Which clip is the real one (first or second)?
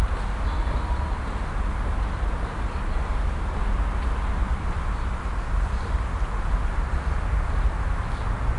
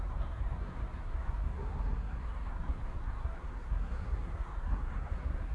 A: first